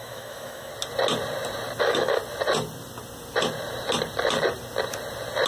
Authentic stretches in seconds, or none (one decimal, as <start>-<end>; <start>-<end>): 0.7-1.8; 2.2-5.5